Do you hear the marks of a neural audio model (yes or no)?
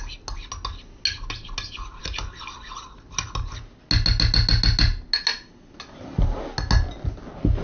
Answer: no